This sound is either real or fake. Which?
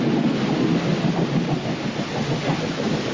real